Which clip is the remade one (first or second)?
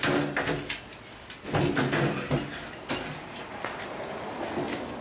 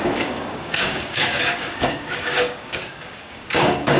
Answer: second